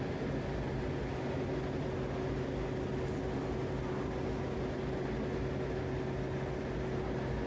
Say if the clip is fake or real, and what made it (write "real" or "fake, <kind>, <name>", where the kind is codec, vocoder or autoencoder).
real